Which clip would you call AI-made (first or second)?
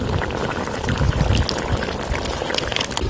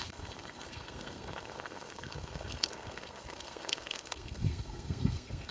second